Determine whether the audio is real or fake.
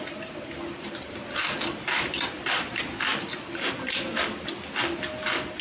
real